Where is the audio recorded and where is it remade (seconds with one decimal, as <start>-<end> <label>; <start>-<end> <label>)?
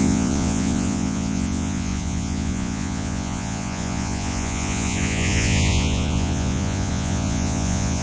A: 0.0-8.0 remade